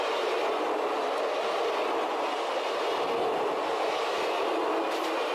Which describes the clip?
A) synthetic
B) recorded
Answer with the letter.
B